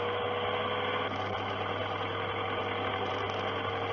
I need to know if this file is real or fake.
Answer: fake